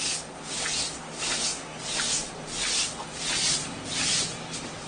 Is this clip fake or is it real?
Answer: real